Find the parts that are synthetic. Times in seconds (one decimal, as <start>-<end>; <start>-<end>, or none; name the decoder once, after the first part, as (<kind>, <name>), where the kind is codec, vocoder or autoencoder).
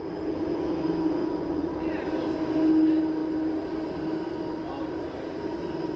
1.2-1.8 (vocoder, Vocos)